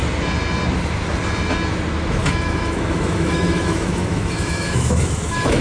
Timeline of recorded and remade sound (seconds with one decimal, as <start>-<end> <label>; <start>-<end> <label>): 0.0-2.2 recorded; 2.2-5.6 remade